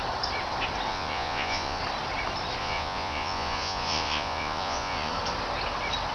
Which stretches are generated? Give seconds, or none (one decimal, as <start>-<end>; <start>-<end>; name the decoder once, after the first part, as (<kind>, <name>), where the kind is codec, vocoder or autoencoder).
0.9-1.8 (vocoder, Vocos); 2.6-5.1